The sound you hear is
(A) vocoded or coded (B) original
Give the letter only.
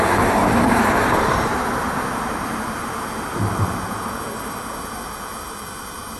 A